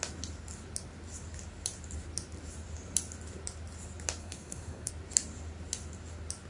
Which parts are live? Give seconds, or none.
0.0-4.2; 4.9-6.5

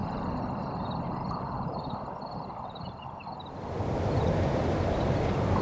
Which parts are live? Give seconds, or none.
0.0-5.6

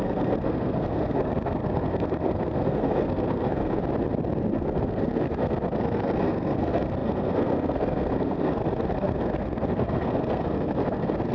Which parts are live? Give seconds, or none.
3.8-4.5